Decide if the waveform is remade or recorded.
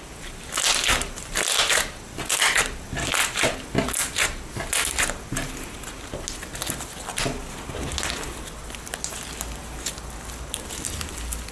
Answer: recorded